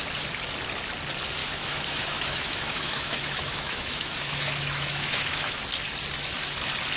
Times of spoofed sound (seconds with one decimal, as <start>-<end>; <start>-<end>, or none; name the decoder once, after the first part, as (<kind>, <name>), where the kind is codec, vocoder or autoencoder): 1.4-5.6 (autoencoder, DAC-VAE)